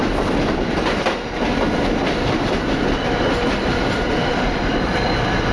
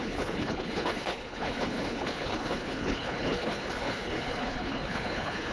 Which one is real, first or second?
first